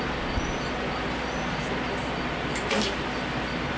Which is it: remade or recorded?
recorded